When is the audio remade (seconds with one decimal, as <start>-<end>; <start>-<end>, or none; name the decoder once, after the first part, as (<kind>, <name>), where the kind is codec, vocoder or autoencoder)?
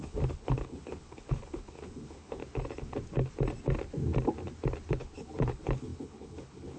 0.0-2.4 (codec, HILCodec); 4.9-6.8